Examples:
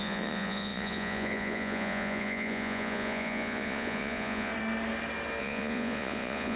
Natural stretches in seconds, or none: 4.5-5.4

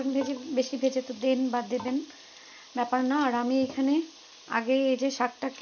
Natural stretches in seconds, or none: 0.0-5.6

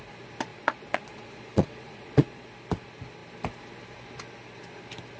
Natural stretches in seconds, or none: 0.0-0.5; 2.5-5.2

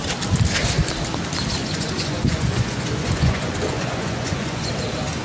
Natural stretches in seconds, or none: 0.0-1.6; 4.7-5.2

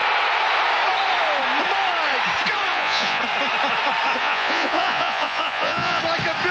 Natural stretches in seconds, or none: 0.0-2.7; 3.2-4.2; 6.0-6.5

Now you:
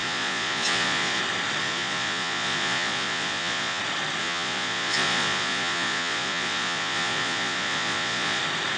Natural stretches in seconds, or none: 1.2-1.6; 3.8-4.2; 8.4-8.8